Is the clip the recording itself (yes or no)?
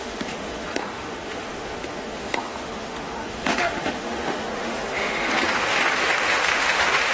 no